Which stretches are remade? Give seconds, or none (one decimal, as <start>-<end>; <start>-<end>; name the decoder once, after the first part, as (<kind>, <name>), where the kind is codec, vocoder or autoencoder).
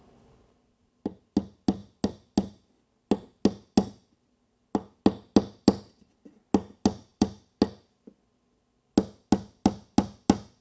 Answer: 7.1-7.6 (vocoder, BigVGAN v2)